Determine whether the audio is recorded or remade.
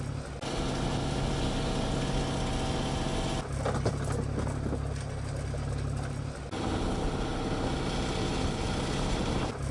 recorded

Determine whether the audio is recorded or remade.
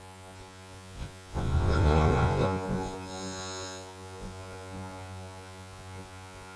remade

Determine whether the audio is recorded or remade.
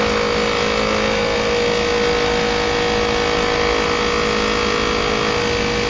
recorded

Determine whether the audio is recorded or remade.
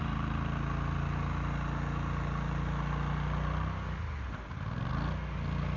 recorded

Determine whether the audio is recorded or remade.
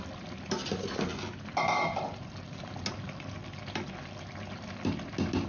recorded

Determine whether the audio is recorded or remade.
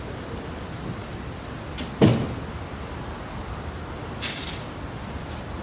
recorded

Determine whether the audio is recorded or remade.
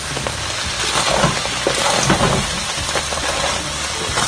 recorded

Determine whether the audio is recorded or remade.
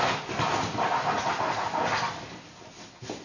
recorded